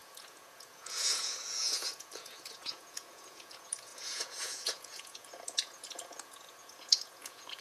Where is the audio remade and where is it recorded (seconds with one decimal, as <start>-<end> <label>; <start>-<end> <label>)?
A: 0.0-7.6 remade